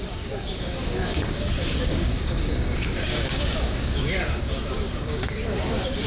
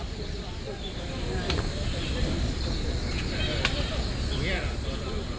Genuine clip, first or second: second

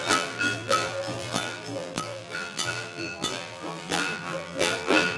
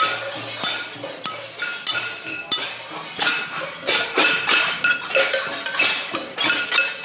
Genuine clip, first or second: second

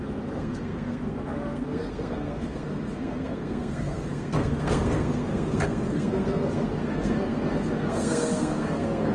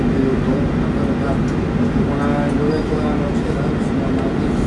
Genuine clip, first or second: second